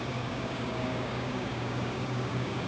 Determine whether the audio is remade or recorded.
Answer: remade